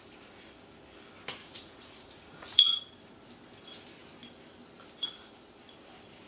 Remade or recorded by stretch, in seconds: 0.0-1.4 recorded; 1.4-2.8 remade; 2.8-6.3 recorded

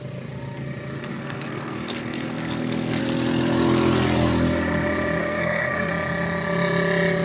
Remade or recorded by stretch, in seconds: 0.0-1.1 recorded; 1.1-3.0 remade; 3.0-5.2 recorded; 5.2-5.9 remade; 5.9-7.2 recorded

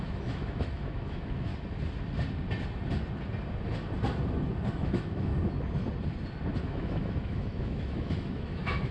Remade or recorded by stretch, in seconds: 0.0-1.5 remade; 1.5-4.7 recorded; 4.7-5.3 remade; 5.3-6.6 recorded; 6.6-8.9 remade

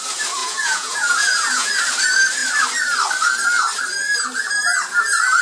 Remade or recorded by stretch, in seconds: 0.0-0.4 recorded; 0.4-1.7 remade; 1.7-5.4 recorded

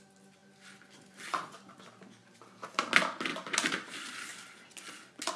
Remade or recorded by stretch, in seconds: 0.0-2.2 recorded; 2.2-2.8 remade; 2.8-3.3 recorded; 3.3-3.9 remade; 3.9-5.4 recorded

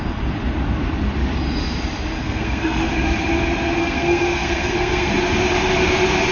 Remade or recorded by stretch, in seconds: 0.0-2.2 recorded; 2.2-2.9 remade; 2.9-3.8 recorded; 3.8-5.1 remade; 5.1-6.3 recorded

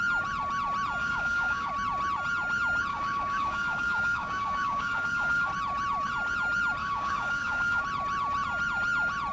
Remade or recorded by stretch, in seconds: 0.0-1.0 recorded; 1.0-1.7 remade; 1.7-2.9 recorded; 2.9-5.5 remade; 5.5-6.8 recorded; 6.8-7.8 remade; 7.8-9.3 recorded